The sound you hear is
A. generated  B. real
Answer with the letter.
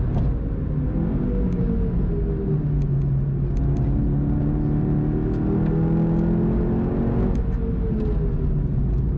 B